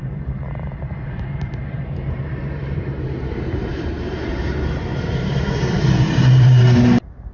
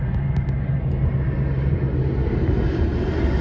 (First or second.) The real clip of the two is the second